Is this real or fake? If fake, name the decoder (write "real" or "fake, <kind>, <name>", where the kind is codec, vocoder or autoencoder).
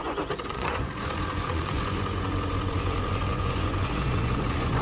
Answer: fake, vocoder, Vocos